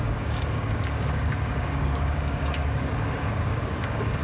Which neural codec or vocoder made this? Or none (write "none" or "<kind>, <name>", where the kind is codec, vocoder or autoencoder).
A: codec, DAC